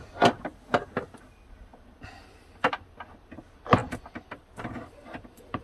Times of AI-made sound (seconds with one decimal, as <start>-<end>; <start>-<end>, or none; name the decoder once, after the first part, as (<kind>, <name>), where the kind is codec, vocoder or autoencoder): 3.8-5.6 (vocoder, BigVGAN v2)